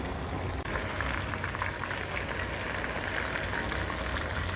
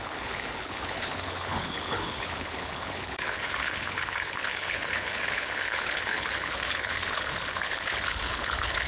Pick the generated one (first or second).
second